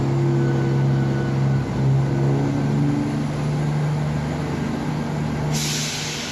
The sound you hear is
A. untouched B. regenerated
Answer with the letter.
A